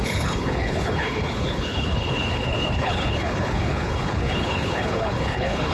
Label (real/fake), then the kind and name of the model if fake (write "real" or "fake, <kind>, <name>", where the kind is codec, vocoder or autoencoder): fake, codec, HILCodec